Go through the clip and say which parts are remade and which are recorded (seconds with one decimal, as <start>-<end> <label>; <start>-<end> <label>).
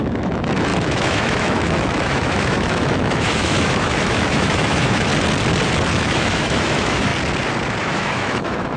0.0-5.1 remade; 5.1-6.0 recorded; 6.0-7.1 remade; 7.1-7.8 recorded; 7.8-8.8 remade